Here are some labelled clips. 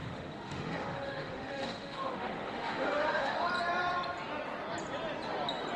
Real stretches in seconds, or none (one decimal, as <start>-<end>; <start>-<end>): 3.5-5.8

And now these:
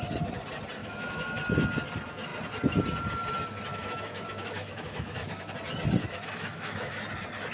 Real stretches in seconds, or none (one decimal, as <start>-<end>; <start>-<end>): 0.0-0.8; 1.4-3.7; 5.5-6.0; 7.0-7.5

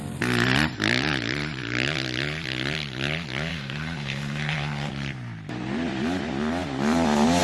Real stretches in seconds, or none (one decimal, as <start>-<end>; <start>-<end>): 0.0-3.5; 4.9-7.4

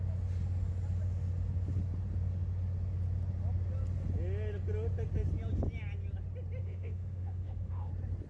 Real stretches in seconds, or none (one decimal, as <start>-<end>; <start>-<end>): 0.0-6.6; 7.9-8.3

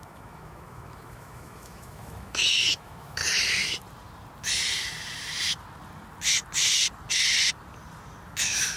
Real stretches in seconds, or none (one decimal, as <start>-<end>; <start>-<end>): 3.2-8.4

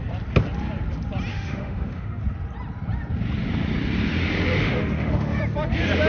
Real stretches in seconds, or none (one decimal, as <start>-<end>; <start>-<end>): 0.0-1.3; 2.2-4.6; 5.4-6.1